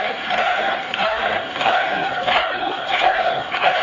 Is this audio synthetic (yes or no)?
yes